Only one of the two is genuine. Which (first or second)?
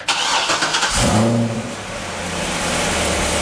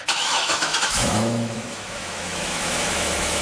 first